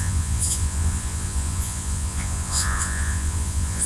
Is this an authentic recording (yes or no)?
no